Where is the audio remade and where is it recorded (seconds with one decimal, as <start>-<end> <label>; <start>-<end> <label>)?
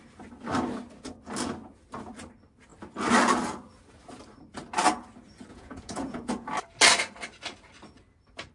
0.0-5.5 recorded; 5.5-6.3 remade; 6.3-8.5 recorded